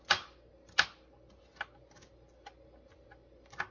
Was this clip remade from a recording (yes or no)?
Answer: no